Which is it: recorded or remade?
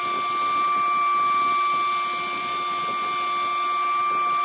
recorded